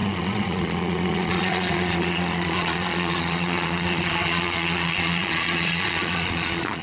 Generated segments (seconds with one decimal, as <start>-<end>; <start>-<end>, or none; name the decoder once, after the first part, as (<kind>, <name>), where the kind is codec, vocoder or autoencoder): 0.0-6.8 (vocoder, Vocos)